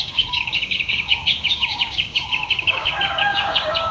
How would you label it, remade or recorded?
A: remade